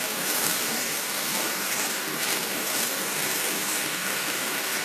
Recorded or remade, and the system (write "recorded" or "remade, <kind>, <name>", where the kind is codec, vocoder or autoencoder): remade, codec, DAC